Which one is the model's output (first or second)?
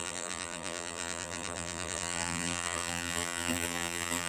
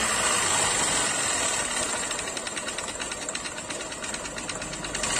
first